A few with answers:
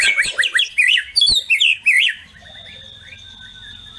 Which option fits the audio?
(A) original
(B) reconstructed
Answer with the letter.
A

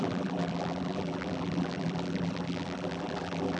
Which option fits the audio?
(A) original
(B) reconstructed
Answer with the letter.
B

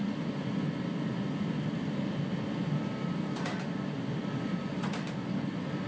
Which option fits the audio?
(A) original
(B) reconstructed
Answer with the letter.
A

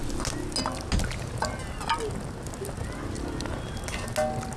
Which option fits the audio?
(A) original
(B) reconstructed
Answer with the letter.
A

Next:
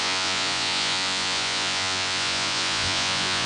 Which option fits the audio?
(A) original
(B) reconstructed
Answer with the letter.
B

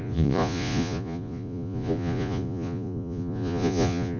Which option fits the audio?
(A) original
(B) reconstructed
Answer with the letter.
B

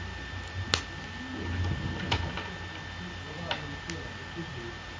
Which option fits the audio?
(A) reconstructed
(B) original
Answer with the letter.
B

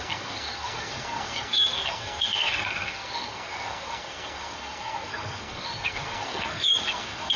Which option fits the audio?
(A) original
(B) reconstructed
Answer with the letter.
B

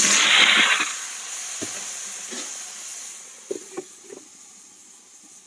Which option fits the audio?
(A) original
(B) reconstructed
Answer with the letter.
A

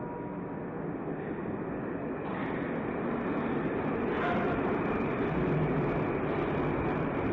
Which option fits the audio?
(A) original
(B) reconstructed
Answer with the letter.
A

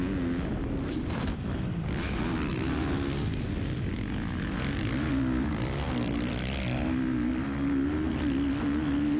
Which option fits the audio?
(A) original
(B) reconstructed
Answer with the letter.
A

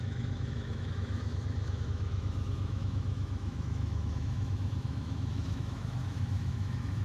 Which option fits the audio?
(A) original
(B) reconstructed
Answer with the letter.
B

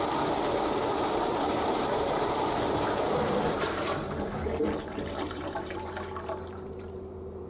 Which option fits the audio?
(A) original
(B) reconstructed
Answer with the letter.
B